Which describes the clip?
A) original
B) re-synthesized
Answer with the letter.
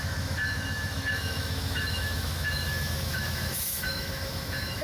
B